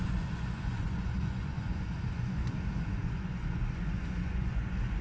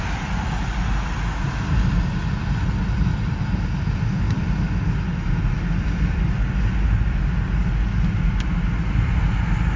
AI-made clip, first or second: first